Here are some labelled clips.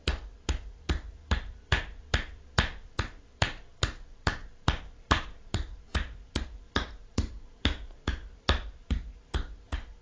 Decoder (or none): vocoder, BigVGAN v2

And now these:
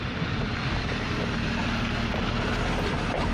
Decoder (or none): vocoder, BigVGAN v2